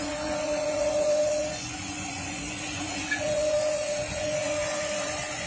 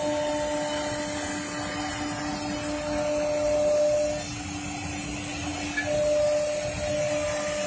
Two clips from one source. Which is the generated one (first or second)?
first